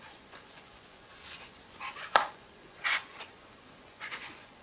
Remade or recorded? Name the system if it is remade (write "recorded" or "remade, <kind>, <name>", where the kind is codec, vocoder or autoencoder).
remade, vocoder, Vocos